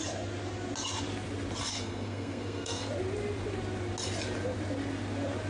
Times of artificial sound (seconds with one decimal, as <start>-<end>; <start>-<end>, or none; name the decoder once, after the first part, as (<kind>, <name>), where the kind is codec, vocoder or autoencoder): 1.7-2.9 (codec, SNAC)